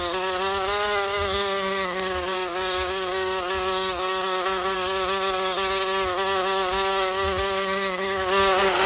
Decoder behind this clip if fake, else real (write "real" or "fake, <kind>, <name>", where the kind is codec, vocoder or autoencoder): fake, codec, DAC